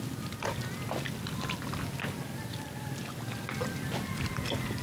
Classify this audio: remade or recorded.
recorded